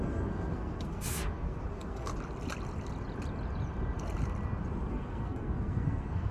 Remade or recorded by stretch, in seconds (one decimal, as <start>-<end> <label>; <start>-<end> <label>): 0.0-2.1 remade; 2.1-4.9 recorded; 4.9-6.3 remade

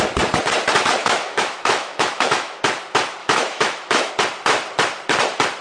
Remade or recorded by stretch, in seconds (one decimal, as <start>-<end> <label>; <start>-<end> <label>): 0.0-1.0 recorded; 1.0-2.6 remade; 2.6-3.2 recorded; 3.2-4.1 remade; 4.1-5.6 recorded

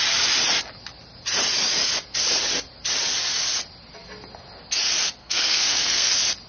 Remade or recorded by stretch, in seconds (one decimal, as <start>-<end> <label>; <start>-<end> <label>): 0.0-5.2 recorded; 5.2-6.1 remade; 6.1-6.5 recorded

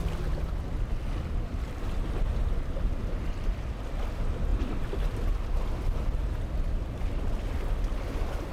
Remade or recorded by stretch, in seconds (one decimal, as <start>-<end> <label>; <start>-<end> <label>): 0.0-3.0 recorded; 3.0-3.9 remade; 3.9-8.5 recorded

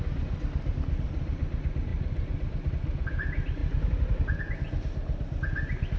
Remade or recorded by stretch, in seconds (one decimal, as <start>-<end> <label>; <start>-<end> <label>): 0.0-6.0 recorded

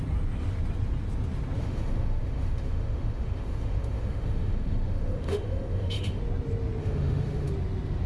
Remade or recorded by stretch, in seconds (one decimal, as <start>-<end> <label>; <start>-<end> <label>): 0.0-1.6 recorded; 1.6-6.2 remade; 6.2-6.8 recorded; 6.8-7.5 remade; 7.5-8.1 recorded